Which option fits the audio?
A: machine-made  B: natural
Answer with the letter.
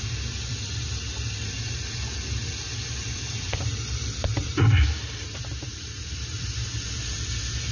A